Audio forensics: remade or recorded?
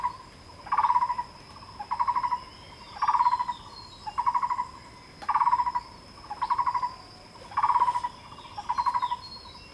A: recorded